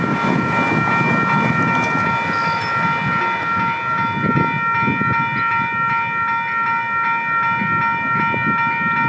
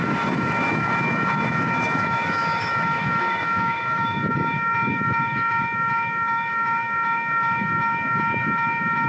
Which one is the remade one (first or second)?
second